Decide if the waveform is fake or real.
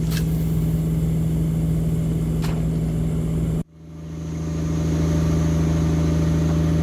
real